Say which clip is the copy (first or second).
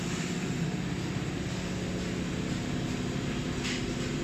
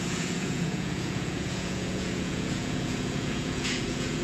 second